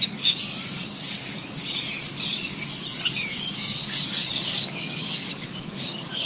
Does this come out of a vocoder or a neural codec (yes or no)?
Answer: yes